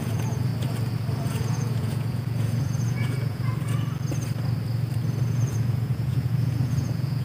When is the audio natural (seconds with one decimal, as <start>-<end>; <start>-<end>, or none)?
0.5-1.4; 3.5-5.2